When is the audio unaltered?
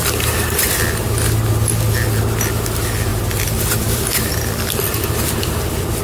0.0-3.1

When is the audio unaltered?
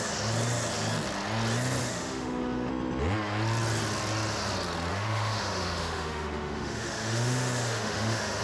0.0-1.8; 2.7-4.9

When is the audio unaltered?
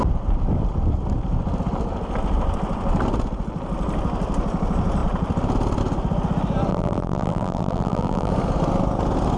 0.0-6.7; 8.3-9.4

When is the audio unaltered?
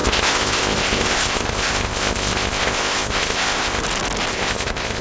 3.8-4.3